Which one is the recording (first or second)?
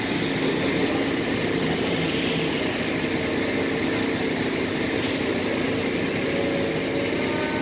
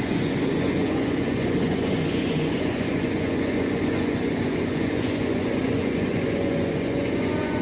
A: first